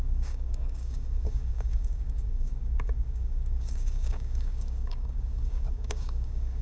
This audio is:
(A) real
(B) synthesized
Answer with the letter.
B